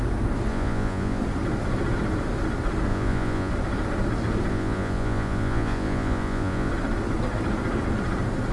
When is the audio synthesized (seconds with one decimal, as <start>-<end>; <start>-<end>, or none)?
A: 0.5-1.2; 2.9-3.5; 4.5-6.7